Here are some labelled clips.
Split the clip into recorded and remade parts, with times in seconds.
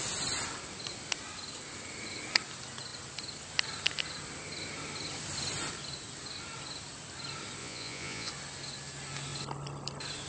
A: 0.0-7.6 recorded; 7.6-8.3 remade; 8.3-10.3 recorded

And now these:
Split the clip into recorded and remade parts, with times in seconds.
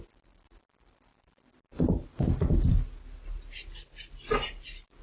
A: 0.0-5.0 recorded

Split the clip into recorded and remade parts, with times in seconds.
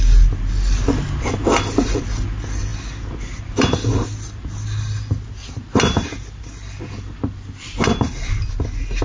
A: 0.0-9.0 recorded